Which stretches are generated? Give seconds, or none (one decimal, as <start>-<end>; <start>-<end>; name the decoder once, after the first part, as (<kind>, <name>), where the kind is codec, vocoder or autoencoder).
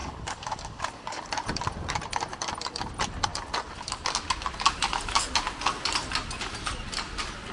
0.0-1.2 (codec, DAC)